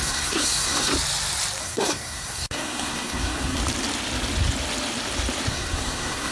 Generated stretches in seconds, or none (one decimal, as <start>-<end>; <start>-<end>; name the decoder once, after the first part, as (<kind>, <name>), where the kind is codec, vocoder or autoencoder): 0.0-0.9 (codec, SNAC); 1.6-3.6; 5.5-6.3